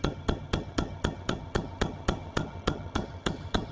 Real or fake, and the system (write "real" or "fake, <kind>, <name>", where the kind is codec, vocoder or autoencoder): fake, vocoder, HiFi-GAN